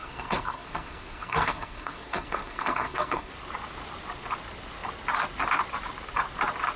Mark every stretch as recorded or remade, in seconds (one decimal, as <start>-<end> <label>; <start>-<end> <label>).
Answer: 0.0-3.3 remade; 3.3-6.8 recorded